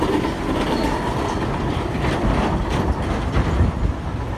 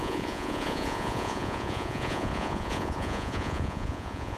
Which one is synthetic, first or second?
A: second